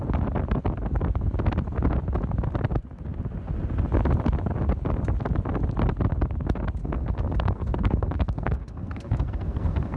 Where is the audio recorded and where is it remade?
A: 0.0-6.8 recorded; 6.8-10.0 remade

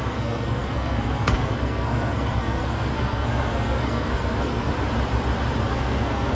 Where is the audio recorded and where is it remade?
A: 0.0-4.7 remade; 4.7-5.7 recorded; 5.7-6.3 remade

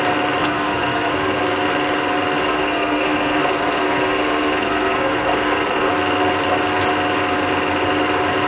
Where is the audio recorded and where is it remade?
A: 0.0-0.4 recorded; 0.4-1.4 remade; 1.4-2.4 recorded; 2.4-5.9 remade; 5.9-8.5 recorded

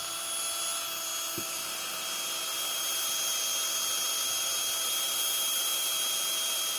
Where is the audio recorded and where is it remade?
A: 0.0-6.8 recorded

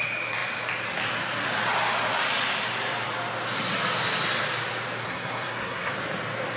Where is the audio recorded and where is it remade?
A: 0.0-5.0 recorded; 5.0-5.9 remade; 5.9-6.6 recorded

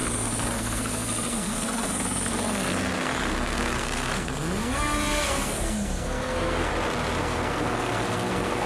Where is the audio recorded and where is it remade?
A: 0.0-6.7 remade; 6.7-7.2 recorded; 7.2-8.7 remade

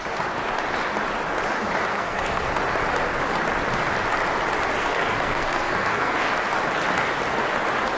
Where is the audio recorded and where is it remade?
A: 0.0-1.9 recorded; 1.9-2.5 remade; 2.5-4.8 recorded; 4.8-6.2 remade; 6.2-8.0 recorded